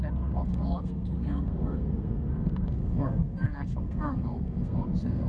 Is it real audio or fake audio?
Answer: fake